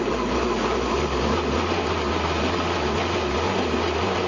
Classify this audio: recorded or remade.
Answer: recorded